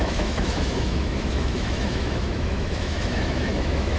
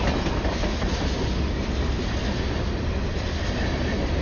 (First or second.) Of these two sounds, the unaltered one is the second